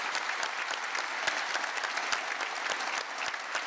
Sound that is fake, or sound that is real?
real